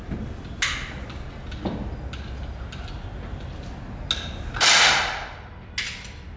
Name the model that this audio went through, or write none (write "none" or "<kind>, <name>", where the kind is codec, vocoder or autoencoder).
none